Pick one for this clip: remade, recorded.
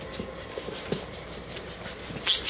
recorded